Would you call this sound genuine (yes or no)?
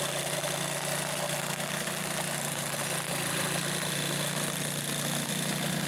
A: yes